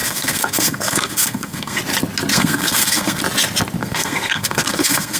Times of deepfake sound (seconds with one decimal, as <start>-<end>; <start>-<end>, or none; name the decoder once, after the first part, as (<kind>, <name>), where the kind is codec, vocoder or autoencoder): 0.0-1.8 (codec, SNAC); 2.3-3.2; 3.8-5.2